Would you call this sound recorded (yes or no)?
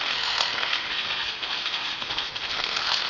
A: no